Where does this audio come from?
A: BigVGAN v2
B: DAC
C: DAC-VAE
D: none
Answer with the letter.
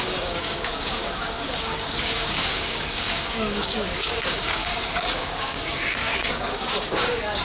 B